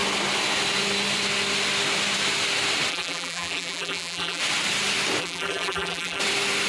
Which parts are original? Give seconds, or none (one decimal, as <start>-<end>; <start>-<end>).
0.0-2.9; 4.4-5.2; 6.2-6.7